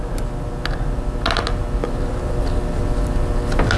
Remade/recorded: recorded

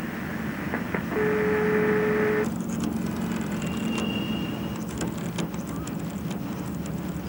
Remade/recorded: recorded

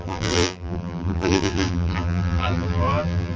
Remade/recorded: remade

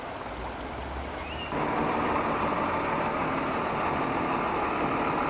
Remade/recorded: recorded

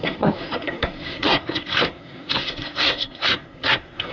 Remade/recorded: remade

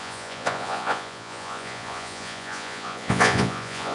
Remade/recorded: remade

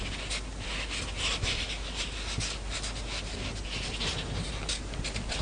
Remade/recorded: recorded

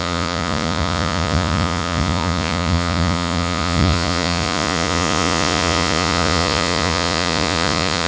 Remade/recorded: remade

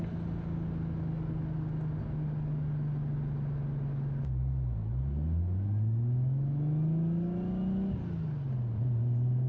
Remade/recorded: recorded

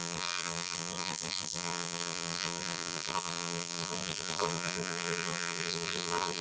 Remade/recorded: remade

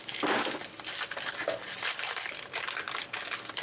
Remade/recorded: remade